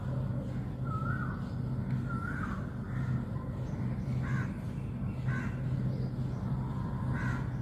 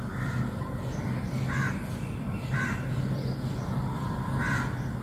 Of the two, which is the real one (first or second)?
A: first